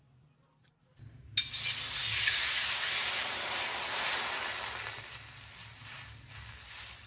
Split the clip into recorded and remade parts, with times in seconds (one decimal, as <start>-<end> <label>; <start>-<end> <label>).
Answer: 0.0-7.1 recorded